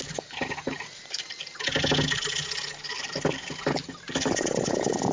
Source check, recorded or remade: recorded